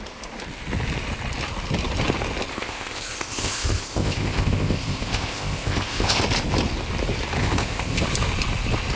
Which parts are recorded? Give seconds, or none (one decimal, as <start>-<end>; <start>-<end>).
0.0-2.5; 6.2-7.4; 8.0-8.9